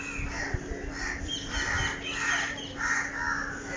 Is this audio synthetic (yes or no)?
no